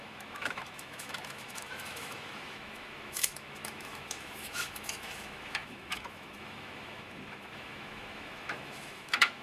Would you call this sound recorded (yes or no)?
no